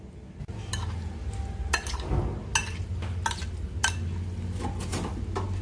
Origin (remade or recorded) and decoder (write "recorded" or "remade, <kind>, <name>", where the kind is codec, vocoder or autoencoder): recorded